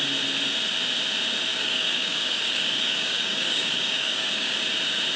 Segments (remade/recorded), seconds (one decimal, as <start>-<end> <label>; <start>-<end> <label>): 0.0-1.5 recorded; 1.5-4.6 remade; 4.6-5.2 recorded